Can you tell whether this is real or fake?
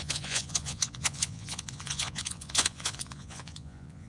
fake